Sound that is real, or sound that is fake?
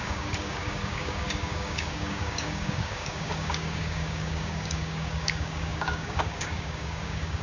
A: fake